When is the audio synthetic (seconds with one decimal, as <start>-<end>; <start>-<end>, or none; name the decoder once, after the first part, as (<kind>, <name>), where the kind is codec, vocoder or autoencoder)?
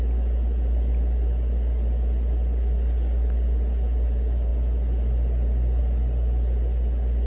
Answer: none